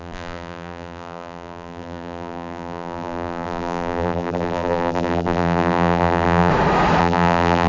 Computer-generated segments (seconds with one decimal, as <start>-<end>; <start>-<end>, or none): 0.0-6.5; 7.0-7.7